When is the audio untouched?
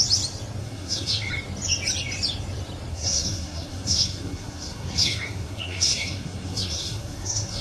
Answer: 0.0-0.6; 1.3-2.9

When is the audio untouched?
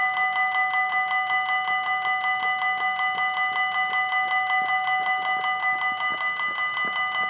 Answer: 0.0-7.3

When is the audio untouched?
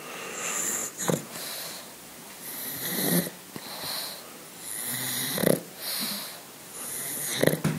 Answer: 0.0-0.8; 3.3-5.4; 6.9-7.8